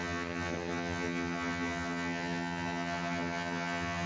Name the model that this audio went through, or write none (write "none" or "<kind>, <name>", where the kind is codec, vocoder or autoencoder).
vocoder, HiFi-GAN